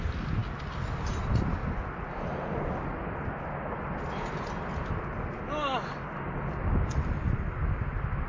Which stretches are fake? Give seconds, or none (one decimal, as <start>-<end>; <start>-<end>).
none